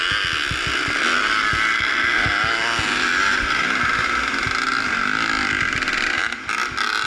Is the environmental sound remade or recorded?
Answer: recorded